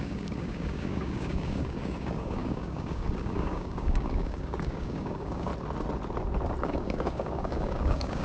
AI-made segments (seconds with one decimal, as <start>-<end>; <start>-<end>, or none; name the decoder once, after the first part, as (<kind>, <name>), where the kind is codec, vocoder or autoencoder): 0.0-5.5 (codec, DAC); 6.6-8.2